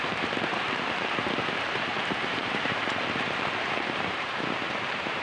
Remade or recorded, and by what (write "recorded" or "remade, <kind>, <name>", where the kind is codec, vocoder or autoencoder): remade, vocoder, BigVGAN v2